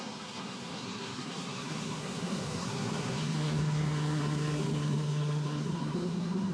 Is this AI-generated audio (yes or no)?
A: yes